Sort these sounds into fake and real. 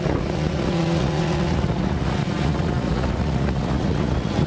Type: fake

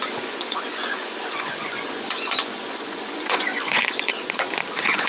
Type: fake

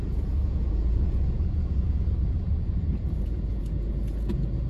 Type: fake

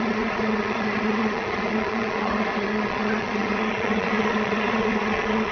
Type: fake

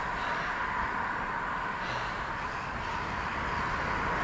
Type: real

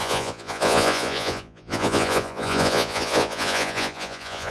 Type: fake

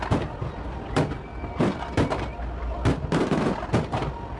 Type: real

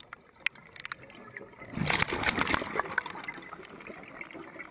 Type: real